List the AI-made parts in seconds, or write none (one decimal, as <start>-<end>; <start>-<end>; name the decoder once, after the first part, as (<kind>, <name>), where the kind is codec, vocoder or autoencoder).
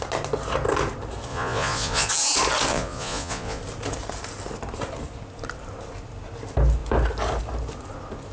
1.3-2.1 (vocoder, Vocos); 2.7-3.6